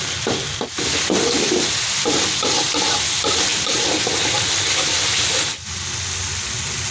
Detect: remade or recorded recorded